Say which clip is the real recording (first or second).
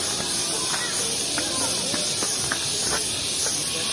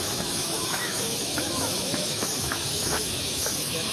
first